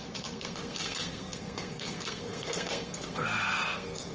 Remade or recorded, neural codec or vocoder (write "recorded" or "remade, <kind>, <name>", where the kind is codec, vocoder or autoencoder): remade, codec, SNAC